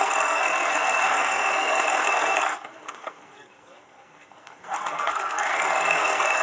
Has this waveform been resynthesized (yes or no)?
yes